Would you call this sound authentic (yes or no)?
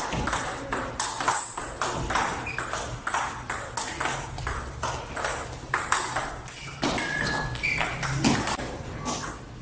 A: yes